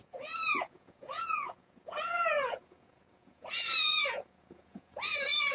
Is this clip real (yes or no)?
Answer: no